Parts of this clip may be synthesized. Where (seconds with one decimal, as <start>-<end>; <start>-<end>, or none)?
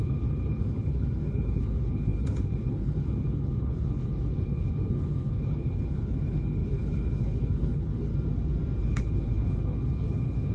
0.0-8.1; 8.8-10.5